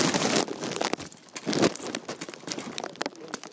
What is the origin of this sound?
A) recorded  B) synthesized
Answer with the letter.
A